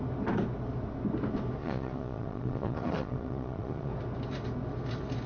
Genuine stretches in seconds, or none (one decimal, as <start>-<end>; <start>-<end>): 0.0-1.6; 3.9-5.3